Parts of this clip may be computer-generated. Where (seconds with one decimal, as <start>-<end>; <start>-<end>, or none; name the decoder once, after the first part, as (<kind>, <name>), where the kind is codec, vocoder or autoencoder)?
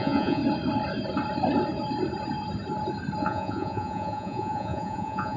0.0-0.4 (vocoder, Vocos); 3.2-5.4